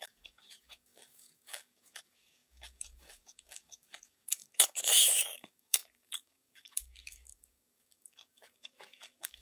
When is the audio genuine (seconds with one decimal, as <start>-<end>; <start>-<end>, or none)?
none